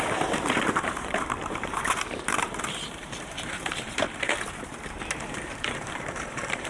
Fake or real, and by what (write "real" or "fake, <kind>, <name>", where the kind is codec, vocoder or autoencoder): fake, vocoder, BigVGAN v2